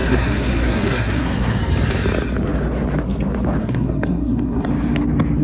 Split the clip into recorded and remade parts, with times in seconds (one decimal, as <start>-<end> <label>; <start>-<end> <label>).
0.0-1.6 remade; 1.6-3.6 recorded; 3.6-4.7 remade; 4.7-5.4 recorded